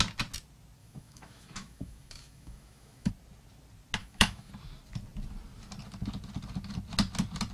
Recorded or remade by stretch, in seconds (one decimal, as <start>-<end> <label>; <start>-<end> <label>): 0.0-0.8 recorded; 0.8-3.1 remade; 3.1-4.0 recorded; 4.0-4.5 remade; 4.5-7.5 recorded